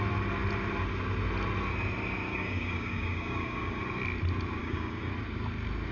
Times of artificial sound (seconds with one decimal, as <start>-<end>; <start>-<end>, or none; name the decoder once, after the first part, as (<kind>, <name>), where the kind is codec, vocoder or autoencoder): 2.3-3.8 (codec, DAC); 4.6-5.1